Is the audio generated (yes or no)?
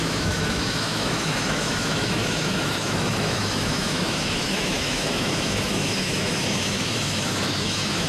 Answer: yes